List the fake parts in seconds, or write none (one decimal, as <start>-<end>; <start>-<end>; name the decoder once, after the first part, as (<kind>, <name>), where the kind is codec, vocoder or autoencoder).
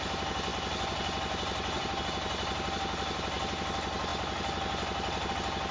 none